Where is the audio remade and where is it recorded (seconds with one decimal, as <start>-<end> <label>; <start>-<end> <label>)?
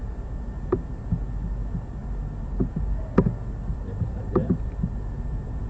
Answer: 0.0-2.0 recorded; 2.0-3.0 remade; 3.0-3.7 recorded; 3.7-5.7 remade